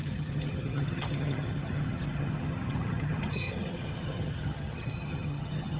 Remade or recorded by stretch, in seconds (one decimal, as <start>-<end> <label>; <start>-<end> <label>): 0.0-5.8 remade